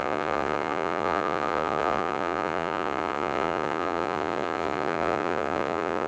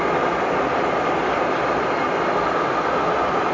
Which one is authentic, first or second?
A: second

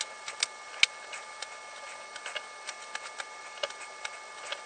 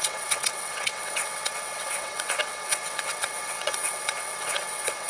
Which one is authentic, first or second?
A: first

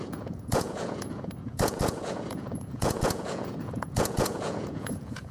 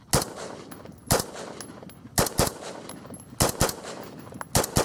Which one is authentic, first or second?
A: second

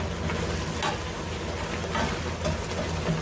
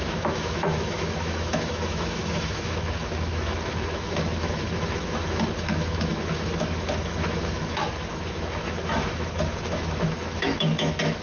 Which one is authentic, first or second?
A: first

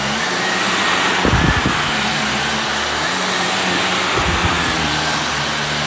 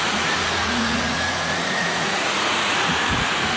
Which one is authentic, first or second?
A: first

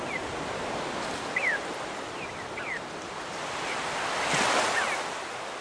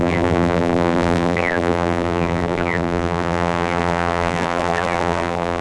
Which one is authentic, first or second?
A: first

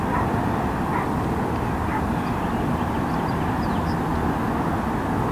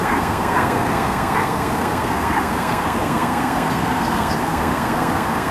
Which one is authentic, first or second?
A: first